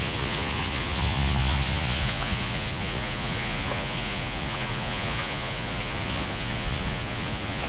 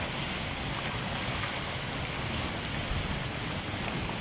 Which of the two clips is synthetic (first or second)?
first